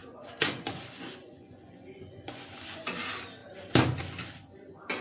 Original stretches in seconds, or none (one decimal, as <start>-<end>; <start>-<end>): 3.0-5.0